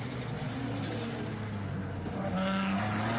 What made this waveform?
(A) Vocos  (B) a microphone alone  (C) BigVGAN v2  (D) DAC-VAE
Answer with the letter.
B